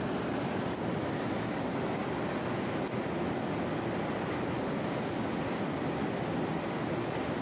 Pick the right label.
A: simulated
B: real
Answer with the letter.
B